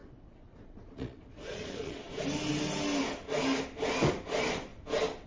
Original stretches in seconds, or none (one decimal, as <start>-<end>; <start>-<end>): 2.1-5.3